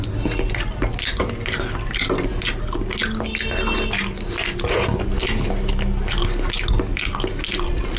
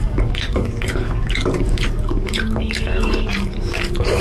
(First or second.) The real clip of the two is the first